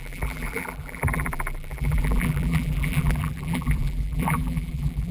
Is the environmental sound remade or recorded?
remade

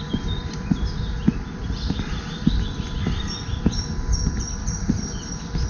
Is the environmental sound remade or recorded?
recorded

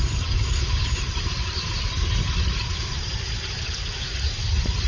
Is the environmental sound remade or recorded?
remade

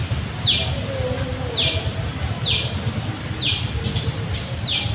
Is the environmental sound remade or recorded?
recorded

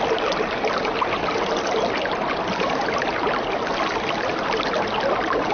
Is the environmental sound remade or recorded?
recorded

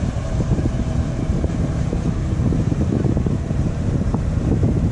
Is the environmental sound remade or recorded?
remade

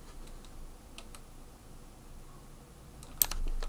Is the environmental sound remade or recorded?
recorded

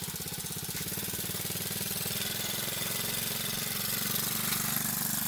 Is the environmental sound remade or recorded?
recorded